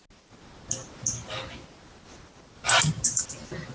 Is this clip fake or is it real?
real